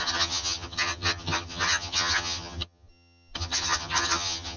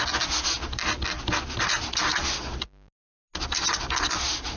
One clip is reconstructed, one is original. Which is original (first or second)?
second